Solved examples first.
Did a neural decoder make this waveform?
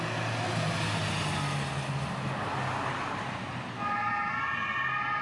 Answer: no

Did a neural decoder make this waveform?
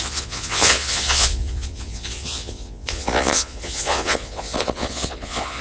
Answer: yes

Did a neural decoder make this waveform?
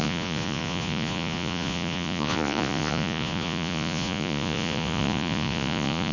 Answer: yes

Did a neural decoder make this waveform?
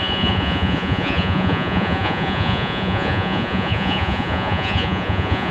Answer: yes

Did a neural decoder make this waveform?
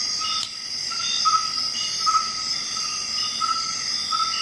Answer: no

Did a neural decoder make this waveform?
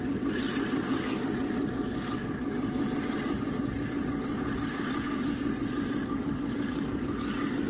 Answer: no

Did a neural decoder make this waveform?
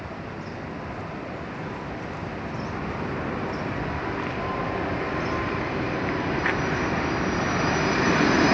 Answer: no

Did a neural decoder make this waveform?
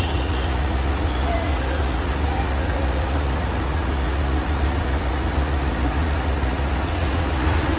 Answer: yes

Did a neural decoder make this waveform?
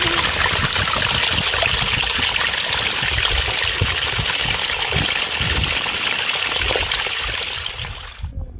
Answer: no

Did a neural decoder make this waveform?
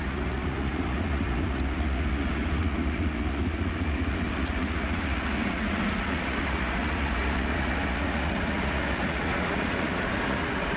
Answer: yes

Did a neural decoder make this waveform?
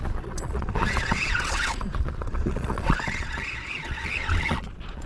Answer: yes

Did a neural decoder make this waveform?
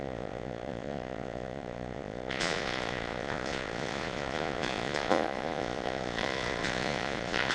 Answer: yes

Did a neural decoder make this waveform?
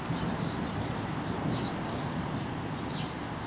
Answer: no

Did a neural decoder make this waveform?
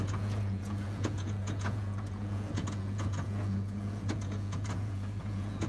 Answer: yes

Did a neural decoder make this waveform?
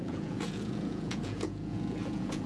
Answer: yes